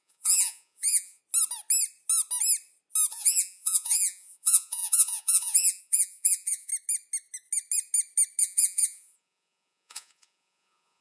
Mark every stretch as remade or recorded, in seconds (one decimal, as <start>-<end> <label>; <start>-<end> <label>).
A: 0.0-1.2 remade; 1.2-3.1 recorded; 3.1-6.7 remade; 6.7-8.4 recorded; 8.4-11.0 remade